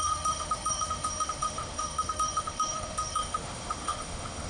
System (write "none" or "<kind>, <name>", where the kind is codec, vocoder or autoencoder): autoencoder, DAC-VAE